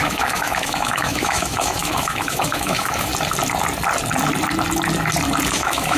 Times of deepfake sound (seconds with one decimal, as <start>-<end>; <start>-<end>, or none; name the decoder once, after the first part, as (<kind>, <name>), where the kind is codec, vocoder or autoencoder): 0.0-3.1 (autoencoder, DAC-VAE); 5.5-6.0